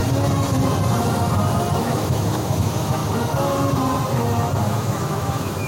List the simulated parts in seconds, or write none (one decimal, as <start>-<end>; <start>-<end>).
1.8-3.0; 4.6-5.7